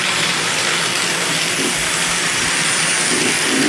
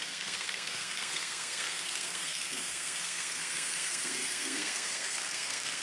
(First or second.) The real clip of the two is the first